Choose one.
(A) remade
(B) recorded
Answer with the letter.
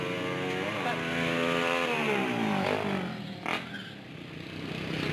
B